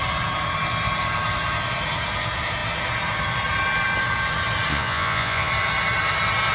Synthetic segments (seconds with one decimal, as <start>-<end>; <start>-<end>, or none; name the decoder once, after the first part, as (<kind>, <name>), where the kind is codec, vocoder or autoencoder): 4.7-5.5 (vocoder, Vocos)